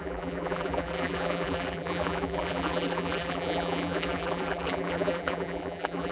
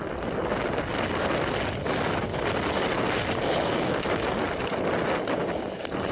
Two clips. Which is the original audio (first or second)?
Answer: second